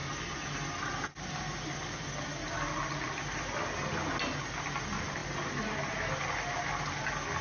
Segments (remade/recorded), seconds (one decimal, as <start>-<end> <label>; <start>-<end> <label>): 0.0-7.4 recorded